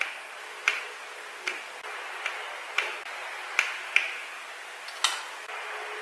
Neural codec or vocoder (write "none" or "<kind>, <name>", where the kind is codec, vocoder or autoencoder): none